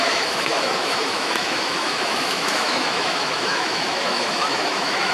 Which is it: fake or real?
fake